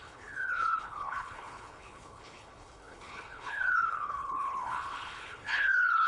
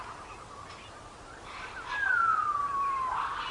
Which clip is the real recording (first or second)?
second